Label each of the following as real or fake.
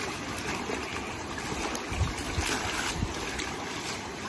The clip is real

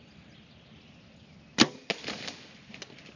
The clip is real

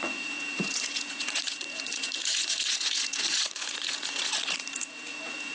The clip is fake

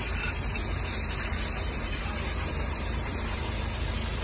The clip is fake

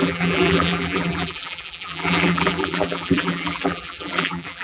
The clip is fake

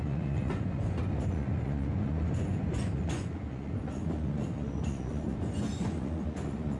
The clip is fake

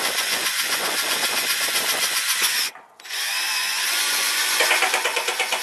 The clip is fake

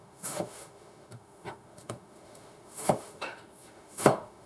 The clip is fake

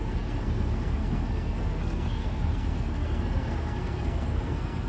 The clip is fake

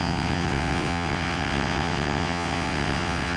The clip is fake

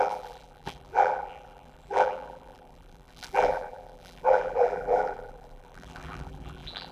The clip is fake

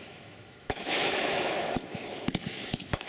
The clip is fake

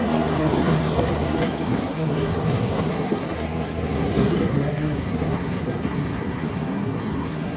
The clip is fake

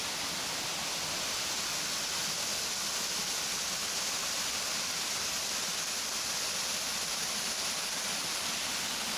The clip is real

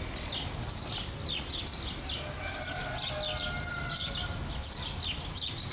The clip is real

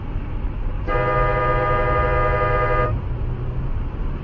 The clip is real